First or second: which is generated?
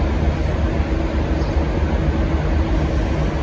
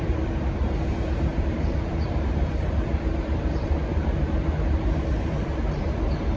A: second